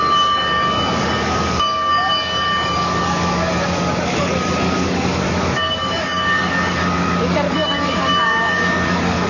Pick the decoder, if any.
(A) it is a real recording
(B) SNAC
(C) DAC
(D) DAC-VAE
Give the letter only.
C